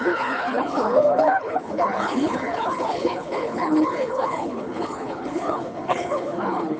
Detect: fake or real fake